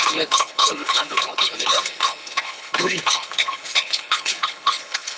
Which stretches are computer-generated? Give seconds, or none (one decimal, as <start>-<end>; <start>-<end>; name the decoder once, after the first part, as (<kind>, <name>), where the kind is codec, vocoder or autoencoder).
0.0-5.2 (codec, HILCodec)